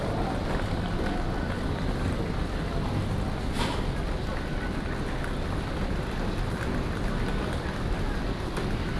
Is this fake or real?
real